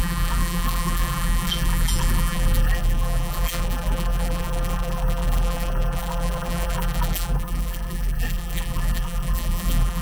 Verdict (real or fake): fake